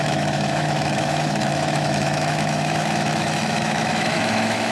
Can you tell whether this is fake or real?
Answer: fake